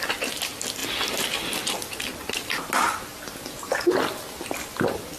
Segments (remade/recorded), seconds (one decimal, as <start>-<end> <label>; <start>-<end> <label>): 0.0-5.2 recorded